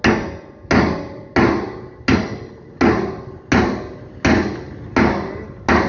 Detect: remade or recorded recorded